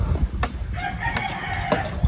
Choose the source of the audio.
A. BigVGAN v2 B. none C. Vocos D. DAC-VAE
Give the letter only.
B